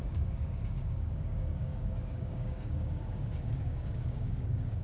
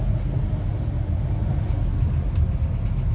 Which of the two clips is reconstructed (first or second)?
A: first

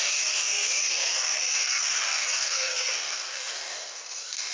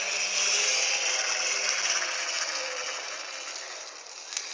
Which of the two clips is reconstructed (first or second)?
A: first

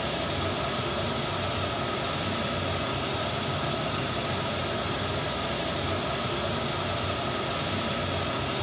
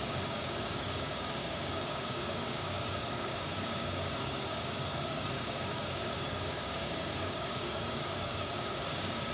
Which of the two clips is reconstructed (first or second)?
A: second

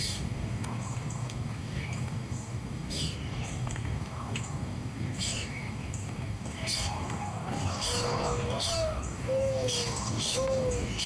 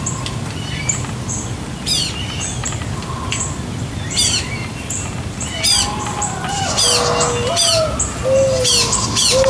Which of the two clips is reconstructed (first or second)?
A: first